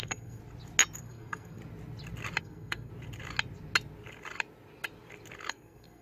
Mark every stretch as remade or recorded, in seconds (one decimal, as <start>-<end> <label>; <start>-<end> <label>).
0.0-0.4 remade; 0.4-1.0 recorded; 1.0-1.6 remade; 1.6-2.4 recorded; 2.4-2.9 remade; 2.9-5.5 recorded; 5.5-6.0 remade